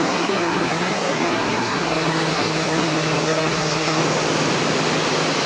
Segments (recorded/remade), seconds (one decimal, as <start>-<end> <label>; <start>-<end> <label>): 0.0-4.0 remade; 4.0-5.5 recorded